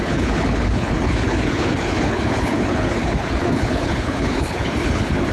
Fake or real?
fake